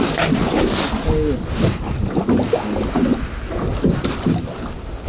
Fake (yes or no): no